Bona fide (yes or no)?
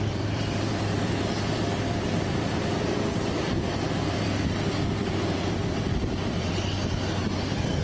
no